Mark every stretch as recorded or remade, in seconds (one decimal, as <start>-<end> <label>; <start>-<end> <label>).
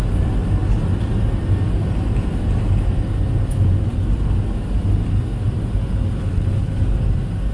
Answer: 0.0-6.2 recorded; 6.2-6.8 remade; 6.8-7.5 recorded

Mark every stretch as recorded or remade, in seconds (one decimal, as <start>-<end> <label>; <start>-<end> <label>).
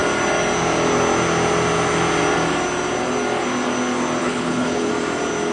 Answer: 0.0-4.2 recorded; 4.2-4.9 remade; 4.9-5.5 recorded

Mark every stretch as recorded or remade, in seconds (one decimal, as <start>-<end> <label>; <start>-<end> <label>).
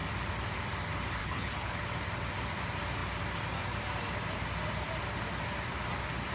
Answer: 0.0-1.2 recorded; 1.2-1.8 remade; 1.8-6.3 recorded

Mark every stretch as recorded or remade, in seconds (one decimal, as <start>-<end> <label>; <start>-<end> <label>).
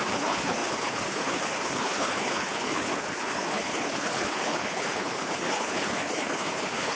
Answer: 0.0-7.0 remade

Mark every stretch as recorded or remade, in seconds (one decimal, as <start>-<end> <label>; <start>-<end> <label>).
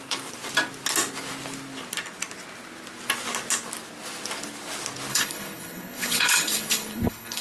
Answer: 0.0-5.1 recorded; 5.1-7.4 remade